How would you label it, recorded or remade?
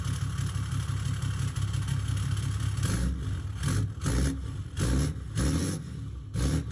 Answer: recorded